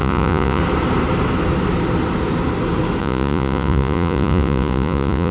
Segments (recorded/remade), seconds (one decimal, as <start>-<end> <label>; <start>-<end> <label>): 0.0-0.6 remade; 0.6-3.0 recorded; 3.0-5.3 remade